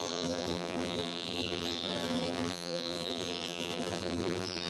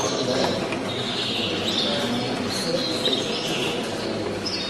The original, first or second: second